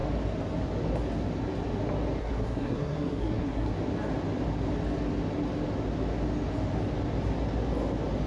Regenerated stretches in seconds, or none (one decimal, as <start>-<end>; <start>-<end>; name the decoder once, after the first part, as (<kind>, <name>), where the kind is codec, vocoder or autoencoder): 2.2-3.7 (codec, SNAC)